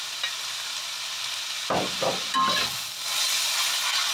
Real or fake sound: real